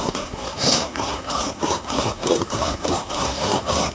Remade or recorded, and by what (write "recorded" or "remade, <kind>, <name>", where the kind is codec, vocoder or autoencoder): remade, codec, SNAC